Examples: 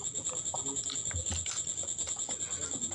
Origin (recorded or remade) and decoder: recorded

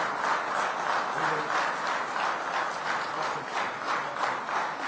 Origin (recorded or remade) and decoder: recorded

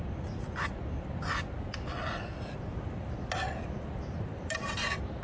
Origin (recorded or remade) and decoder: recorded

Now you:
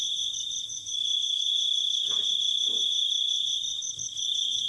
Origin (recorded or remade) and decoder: remade, autoencoder, DAC-VAE